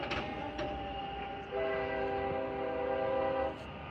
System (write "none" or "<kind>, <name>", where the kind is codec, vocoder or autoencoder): none